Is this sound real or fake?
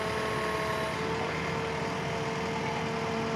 real